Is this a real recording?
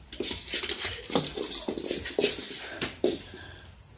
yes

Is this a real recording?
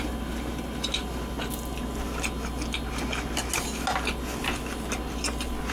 yes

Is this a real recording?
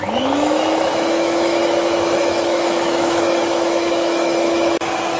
no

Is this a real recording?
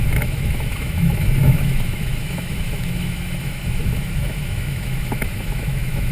no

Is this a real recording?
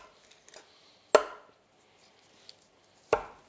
yes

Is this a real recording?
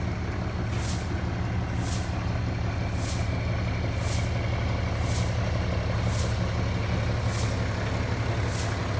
yes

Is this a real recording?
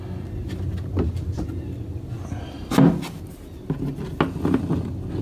yes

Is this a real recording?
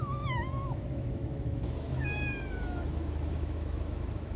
no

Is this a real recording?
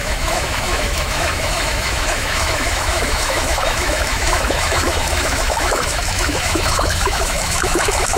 no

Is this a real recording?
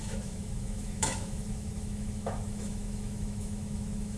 no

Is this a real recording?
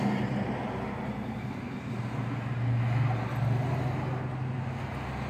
yes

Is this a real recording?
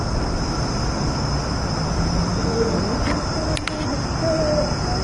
yes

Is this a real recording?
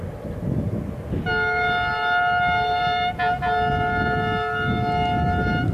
yes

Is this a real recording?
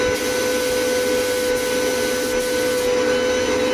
yes